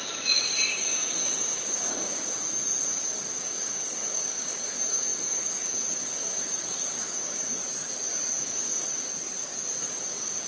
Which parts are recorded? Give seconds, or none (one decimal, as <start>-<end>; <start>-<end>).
7.6-8.4; 9.1-9.8